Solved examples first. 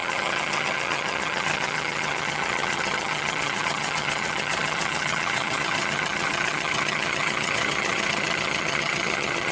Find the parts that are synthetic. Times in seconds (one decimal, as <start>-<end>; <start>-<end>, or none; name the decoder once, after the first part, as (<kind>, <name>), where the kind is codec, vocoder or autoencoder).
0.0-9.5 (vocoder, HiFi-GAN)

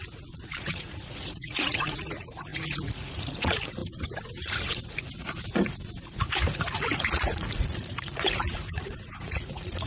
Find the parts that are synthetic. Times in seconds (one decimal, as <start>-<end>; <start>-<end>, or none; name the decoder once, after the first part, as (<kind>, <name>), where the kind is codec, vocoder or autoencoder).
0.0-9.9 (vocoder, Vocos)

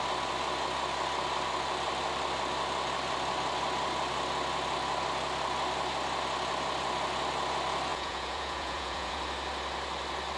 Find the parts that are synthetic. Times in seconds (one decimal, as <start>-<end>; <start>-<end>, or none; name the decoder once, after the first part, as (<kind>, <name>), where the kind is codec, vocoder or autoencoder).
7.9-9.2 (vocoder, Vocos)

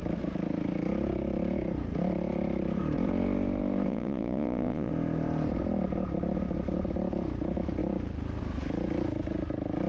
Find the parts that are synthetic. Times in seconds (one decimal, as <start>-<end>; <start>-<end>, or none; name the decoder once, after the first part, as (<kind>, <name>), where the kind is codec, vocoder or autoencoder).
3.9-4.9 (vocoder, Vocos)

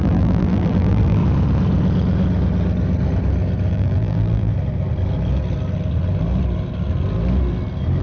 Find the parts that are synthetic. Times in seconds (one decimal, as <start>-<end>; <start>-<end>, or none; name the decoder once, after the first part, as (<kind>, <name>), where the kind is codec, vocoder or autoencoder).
0.0-1.2 (vocoder, BigVGAN v2); 3.7-4.5

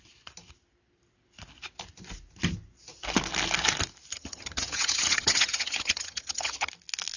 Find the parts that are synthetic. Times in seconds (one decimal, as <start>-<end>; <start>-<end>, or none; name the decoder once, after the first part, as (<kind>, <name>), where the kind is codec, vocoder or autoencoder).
4.1-6.7 (vocoder, HiFi-GAN)

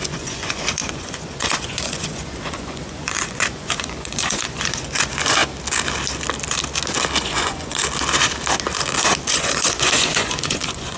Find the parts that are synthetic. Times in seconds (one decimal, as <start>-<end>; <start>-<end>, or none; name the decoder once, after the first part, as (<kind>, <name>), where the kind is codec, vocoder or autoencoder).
0.0-5.4 (vocoder, Vocos); 7.2-7.8; 9.3-11.0

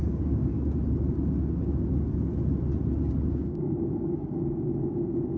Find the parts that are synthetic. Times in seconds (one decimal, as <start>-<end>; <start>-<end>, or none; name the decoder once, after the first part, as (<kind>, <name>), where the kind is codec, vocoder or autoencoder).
0.0-0.5 (codec, DAC); 3.3-5.4